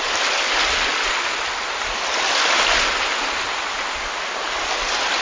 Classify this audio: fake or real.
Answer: real